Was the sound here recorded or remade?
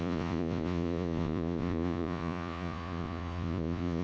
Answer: remade